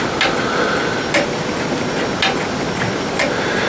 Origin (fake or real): real